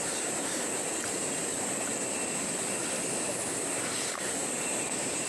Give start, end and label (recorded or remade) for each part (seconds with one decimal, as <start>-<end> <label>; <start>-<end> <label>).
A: 0.0-1.5 remade; 1.5-3.9 recorded; 3.9-5.3 remade